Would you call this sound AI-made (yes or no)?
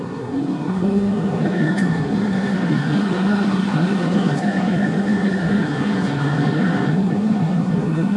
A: yes